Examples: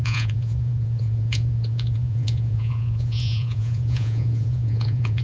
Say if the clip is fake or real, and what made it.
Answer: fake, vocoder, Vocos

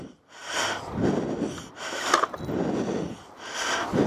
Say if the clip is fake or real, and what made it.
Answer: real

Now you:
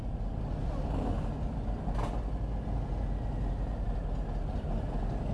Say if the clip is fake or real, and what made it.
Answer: real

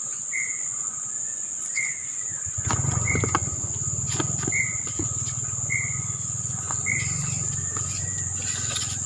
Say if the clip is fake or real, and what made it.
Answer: fake, vocoder, Vocos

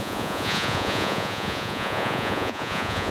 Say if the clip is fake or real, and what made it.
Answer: fake, vocoder, Vocos